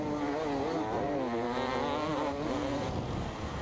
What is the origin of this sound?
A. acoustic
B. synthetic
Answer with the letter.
A